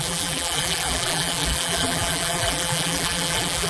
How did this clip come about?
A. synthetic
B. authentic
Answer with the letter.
A